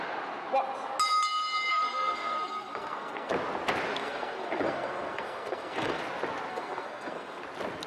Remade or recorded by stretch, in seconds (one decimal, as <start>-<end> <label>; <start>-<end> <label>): 0.0-1.7 recorded; 1.7-3.3 remade; 3.3-4.0 recorded; 4.0-6.0 remade; 6.0-6.5 recorded; 6.5-7.4 remade; 7.4-7.9 recorded